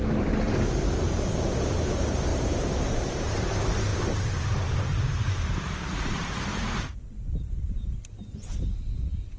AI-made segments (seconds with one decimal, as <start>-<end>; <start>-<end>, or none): 0.0-9.4